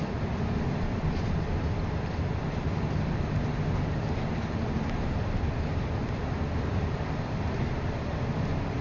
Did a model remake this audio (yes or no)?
no